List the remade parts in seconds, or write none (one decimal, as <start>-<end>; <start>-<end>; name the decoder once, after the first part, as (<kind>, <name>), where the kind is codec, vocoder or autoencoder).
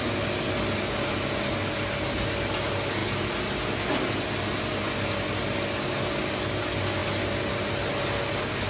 none